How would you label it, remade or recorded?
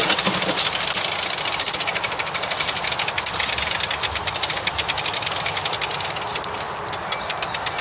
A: recorded